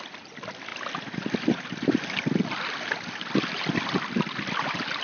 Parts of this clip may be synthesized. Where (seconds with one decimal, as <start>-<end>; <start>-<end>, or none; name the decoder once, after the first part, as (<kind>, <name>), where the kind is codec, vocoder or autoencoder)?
none

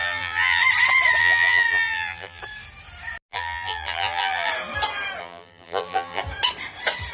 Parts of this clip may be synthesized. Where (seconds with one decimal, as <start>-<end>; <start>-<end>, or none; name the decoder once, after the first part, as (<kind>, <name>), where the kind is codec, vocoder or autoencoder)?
0.0-0.6 (vocoder, BigVGAN v2); 1.2-2.4; 3.3-4.5; 5.2-6.2

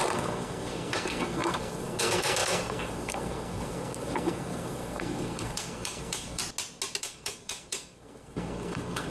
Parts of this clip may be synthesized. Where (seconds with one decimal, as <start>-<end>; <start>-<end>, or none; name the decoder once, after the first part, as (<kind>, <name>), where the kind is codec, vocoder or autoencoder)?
0.0-6.4 (codec, SNAC); 7.0-9.1

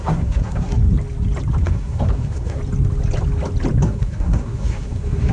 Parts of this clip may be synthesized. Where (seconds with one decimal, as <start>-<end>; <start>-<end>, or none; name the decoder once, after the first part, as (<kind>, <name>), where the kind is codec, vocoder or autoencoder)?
0.0-0.8 (codec, SNAC); 1.6-2.6; 3.8-5.3

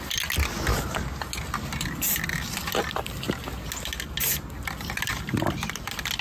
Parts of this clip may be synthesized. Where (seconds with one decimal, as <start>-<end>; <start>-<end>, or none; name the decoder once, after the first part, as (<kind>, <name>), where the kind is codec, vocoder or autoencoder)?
none

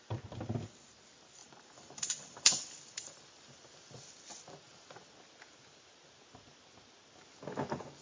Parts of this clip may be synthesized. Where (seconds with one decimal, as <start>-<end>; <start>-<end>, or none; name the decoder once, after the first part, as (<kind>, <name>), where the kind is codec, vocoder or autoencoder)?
1.4-5.1 (vocoder, BigVGAN v2)

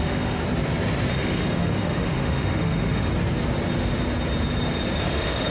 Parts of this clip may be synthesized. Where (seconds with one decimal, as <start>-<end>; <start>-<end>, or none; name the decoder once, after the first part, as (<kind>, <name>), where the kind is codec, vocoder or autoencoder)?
0.0-0.4 (autoencoder, DAC-VAE); 1.1-3.1; 5.0-5.5

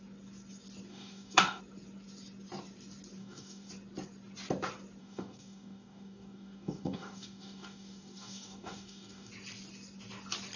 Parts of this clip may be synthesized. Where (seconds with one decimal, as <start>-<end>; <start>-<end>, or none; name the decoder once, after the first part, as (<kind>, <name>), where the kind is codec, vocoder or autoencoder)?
0.9-1.6 (codec, DAC); 3.2-3.7; 5.0-9.3